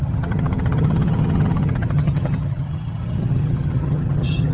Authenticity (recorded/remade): remade